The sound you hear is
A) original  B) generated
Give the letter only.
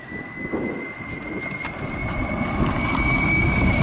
A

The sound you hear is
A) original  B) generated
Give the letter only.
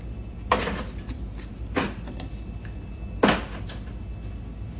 A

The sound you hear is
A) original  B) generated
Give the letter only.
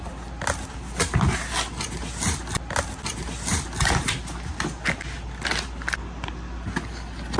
A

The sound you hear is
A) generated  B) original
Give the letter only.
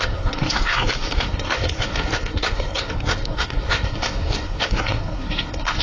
A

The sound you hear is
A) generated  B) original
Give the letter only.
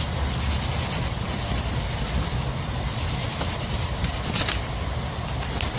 B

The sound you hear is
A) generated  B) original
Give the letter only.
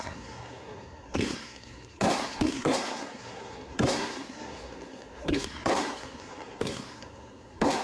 A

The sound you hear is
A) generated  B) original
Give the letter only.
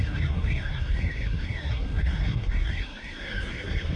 A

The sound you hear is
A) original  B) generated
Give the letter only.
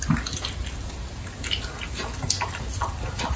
A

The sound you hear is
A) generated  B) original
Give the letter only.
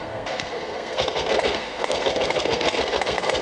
A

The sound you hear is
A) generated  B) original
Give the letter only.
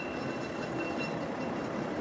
B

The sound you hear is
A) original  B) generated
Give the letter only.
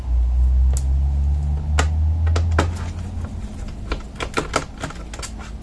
A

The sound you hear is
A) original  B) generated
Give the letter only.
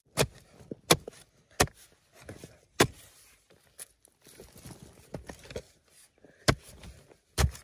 A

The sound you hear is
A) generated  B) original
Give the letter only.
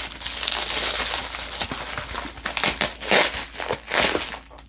B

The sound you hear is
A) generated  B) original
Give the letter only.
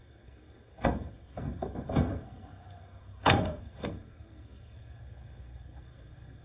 A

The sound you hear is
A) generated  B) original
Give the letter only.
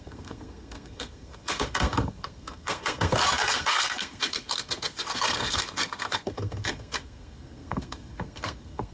A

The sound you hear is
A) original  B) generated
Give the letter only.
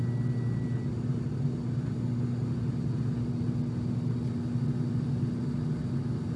A